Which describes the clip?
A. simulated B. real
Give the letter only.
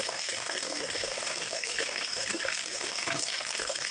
A